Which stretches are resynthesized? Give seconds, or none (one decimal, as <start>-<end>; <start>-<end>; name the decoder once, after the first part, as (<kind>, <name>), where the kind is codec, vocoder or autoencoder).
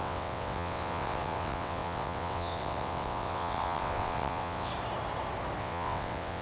0.0-4.7 (vocoder, WaveNeXt); 5.6-6.4